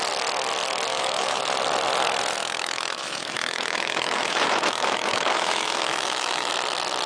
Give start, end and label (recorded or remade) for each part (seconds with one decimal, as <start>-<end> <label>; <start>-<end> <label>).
0.0-0.9 recorded; 0.9-1.4 remade; 1.4-2.4 recorded; 2.4-6.5 remade; 6.5-7.1 recorded